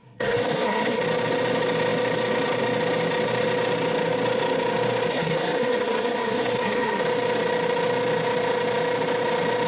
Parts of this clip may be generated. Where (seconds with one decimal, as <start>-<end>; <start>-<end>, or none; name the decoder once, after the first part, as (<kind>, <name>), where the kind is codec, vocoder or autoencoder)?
0.0-1.0 (codec, SNAC); 5.1-7.0